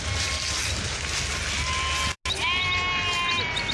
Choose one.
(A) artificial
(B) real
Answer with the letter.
B